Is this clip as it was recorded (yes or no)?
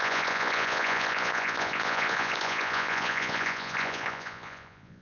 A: no